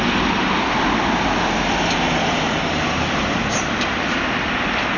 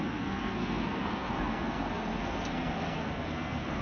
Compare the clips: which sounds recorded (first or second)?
first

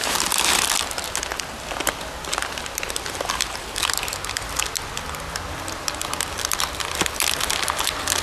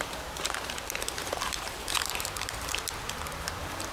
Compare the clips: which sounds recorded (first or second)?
first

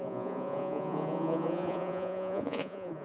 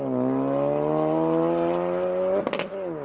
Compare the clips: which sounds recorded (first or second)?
second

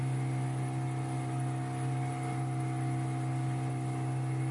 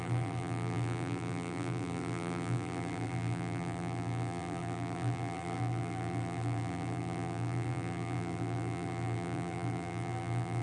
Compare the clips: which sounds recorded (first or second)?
first